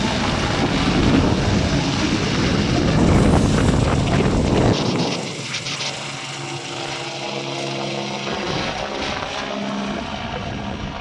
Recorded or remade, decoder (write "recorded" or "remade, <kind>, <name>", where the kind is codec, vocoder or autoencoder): recorded